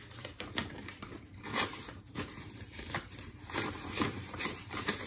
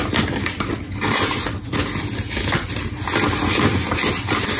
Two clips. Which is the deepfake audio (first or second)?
first